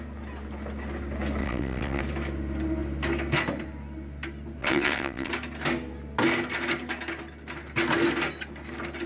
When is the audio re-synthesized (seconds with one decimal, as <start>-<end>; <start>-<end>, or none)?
1.4-2.0; 4.6-5.3

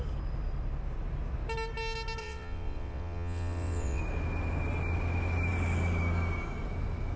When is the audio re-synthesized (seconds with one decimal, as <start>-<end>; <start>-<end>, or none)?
2.2-4.0